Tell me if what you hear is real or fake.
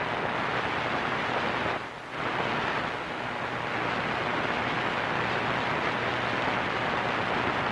real